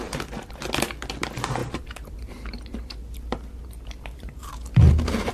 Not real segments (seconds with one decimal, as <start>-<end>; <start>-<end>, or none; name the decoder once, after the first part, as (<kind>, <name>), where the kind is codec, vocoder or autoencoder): 1.6-4.8 (vocoder, BigVGAN v2)